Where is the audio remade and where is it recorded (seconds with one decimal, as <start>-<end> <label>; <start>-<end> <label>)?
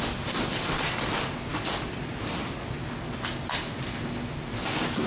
0.0-5.1 recorded